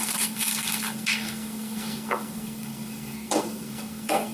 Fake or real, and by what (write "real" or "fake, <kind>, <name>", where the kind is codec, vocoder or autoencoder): fake, codec, SNAC